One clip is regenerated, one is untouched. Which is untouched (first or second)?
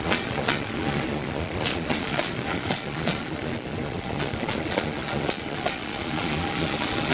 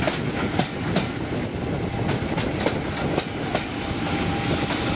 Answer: second